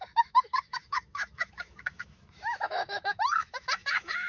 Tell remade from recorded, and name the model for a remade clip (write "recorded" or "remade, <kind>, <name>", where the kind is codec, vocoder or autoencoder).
remade, autoencoder, DAC-VAE